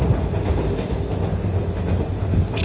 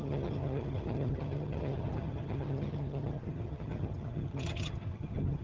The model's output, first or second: second